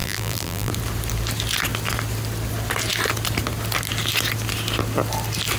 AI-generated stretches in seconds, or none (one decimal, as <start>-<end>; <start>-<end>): 0.0-0.7